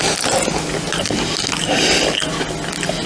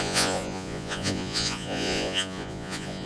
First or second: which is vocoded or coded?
second